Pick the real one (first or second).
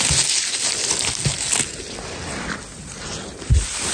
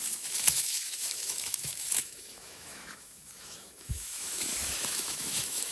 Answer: first